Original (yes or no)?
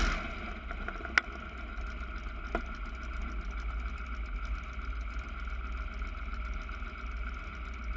yes